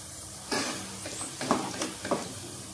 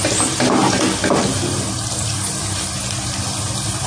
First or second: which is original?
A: second